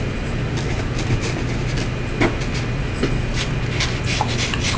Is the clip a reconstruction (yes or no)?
no